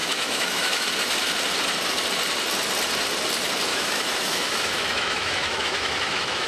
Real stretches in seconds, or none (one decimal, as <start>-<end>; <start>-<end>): 0.9-3.7